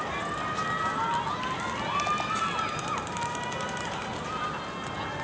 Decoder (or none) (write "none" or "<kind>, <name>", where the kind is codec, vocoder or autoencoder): none